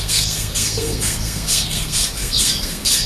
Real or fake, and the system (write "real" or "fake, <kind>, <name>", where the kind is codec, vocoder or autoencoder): fake, codec, SNAC